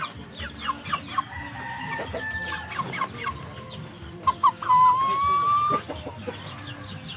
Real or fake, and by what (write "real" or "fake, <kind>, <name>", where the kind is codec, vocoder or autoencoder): real